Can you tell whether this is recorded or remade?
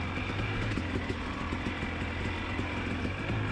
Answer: recorded